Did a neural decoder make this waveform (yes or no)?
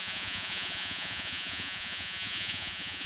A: yes